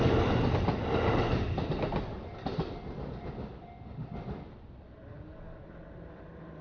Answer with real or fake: real